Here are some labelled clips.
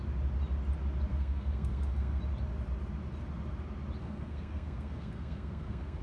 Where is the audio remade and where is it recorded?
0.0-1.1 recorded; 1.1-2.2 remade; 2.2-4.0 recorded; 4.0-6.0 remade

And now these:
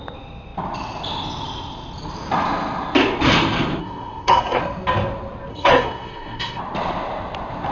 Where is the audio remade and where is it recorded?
0.0-3.8 recorded; 3.8-4.6 remade; 4.6-5.5 recorded; 5.5-6.6 remade; 6.6-7.7 recorded

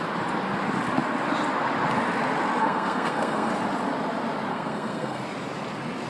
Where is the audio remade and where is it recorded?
0.0-2.6 recorded; 2.6-3.5 remade; 3.5-4.5 recorded; 4.5-5.2 remade; 5.2-6.1 recorded

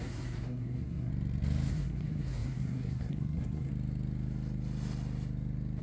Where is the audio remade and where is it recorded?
0.0-1.1 remade; 1.1-1.7 recorded; 1.7-3.7 remade; 3.7-5.8 recorded

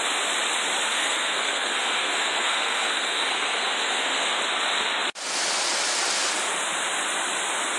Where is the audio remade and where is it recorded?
0.0-0.9 recorded; 0.9-4.4 remade; 4.4-7.8 recorded

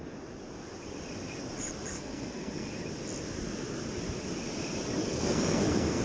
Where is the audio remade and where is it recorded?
0.0-1.9 recorded; 1.9-2.7 remade; 2.7-5.0 recorded; 5.0-6.0 remade